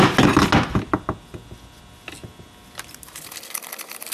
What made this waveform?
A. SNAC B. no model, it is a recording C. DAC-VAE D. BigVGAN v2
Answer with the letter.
B